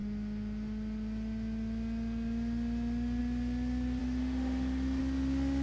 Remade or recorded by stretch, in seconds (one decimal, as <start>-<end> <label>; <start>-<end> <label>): 0.0-4.0 recorded; 4.0-5.0 remade; 5.0-5.6 recorded